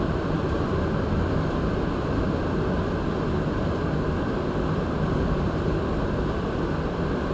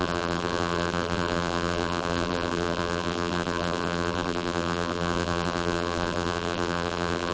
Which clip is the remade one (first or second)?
second